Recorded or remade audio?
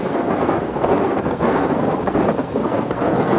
remade